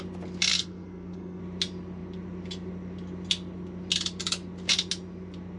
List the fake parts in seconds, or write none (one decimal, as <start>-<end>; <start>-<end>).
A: 0.5-1.4